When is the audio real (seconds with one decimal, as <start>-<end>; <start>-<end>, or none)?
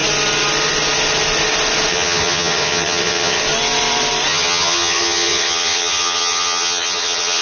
0.0-1.9; 3.4-4.3